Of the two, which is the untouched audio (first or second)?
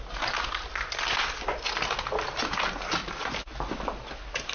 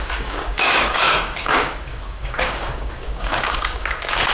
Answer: first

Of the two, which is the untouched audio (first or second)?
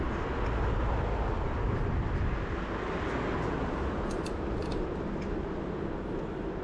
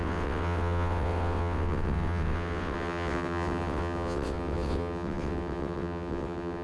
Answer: first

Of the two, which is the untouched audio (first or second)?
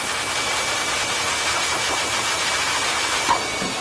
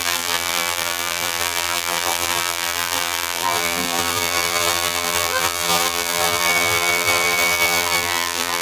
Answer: first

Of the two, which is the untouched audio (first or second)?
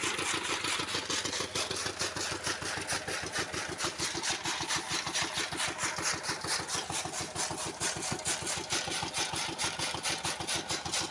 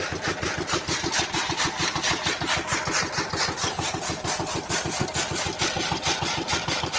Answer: first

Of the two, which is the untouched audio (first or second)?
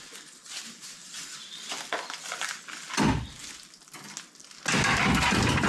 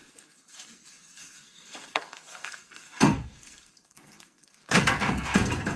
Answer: first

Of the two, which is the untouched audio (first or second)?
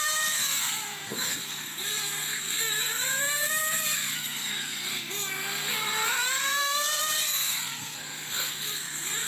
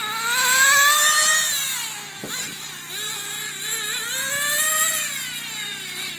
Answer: second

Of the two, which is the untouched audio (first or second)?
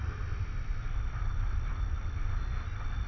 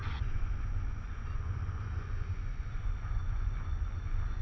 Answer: first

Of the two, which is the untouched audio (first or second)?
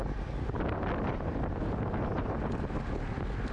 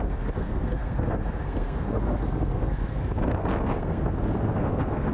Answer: first